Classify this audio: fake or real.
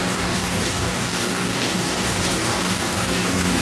fake